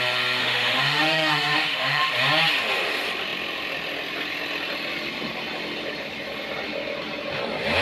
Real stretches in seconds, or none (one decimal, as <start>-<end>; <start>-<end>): 0.0-0.4; 2.1-7.8